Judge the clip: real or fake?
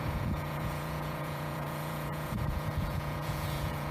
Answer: fake